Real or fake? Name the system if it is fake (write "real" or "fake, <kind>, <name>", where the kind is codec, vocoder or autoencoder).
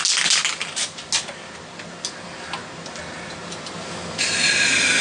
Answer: real